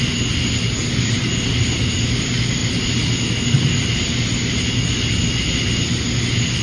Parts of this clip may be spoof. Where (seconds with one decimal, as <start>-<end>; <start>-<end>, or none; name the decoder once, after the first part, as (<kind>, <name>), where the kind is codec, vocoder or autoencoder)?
none